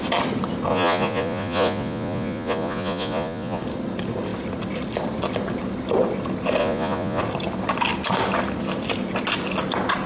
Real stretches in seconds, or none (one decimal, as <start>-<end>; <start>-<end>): 0.0-0.7; 3.6-6.6; 7.2-10.1